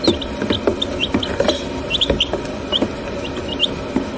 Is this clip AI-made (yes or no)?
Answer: no